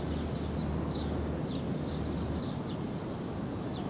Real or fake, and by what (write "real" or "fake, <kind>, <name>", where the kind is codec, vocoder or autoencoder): real